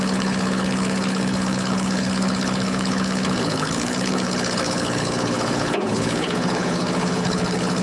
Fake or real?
fake